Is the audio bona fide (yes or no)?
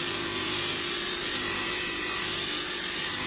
no